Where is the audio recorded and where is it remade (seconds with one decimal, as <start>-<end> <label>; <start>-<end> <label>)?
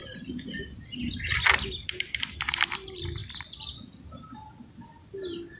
0.0-5.6 recorded